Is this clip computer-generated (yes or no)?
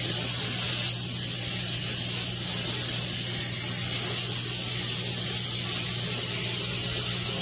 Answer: no